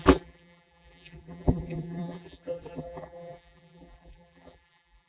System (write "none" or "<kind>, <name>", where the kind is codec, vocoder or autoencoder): vocoder, BigVGAN v2